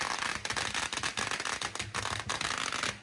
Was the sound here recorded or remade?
recorded